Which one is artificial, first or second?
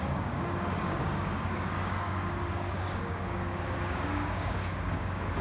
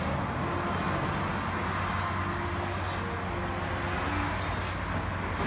first